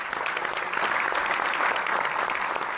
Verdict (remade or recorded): recorded